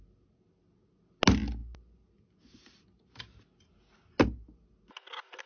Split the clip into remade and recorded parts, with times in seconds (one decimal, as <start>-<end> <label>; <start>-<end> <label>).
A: 0.0-5.5 recorded

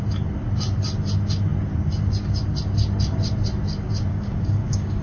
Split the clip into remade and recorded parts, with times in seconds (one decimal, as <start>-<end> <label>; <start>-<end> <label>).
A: 0.0-4.1 recorded; 4.1-5.0 remade